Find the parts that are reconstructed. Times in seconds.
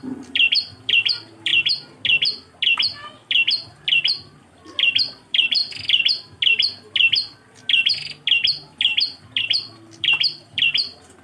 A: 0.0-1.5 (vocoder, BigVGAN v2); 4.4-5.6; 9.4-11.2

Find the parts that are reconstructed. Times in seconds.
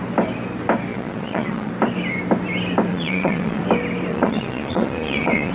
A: 0.9-1.7 (vocoder, Vocos); 2.9-3.6; 4.1-5.5